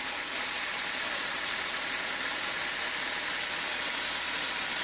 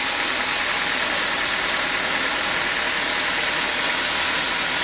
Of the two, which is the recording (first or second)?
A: second